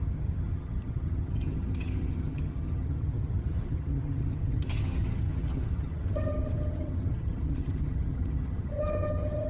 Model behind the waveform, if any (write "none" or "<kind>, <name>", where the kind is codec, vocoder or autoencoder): vocoder, HiFi-GAN